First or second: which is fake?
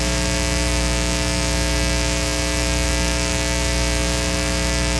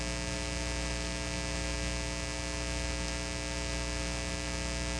first